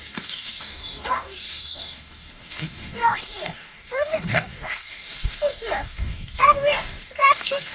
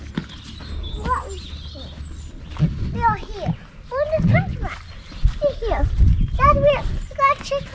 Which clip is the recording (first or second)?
second